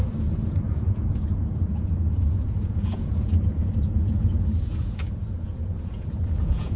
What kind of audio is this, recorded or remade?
remade